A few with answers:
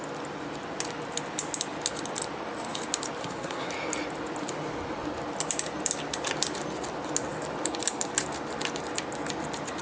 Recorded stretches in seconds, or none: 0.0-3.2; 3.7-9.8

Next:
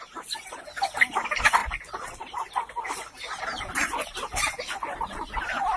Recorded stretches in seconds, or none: 0.0-5.8